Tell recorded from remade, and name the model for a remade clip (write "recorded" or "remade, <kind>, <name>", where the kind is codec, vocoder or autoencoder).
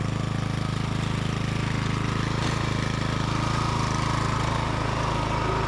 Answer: recorded